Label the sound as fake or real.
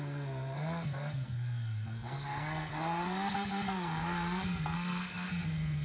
fake